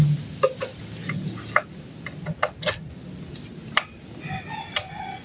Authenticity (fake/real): real